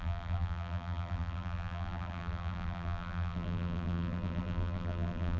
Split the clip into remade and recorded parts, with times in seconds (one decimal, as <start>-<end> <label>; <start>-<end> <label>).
0.0-5.4 remade